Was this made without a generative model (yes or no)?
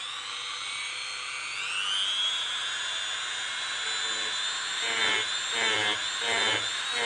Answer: yes